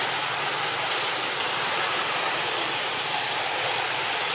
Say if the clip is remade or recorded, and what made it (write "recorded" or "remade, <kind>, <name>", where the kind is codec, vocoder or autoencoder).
recorded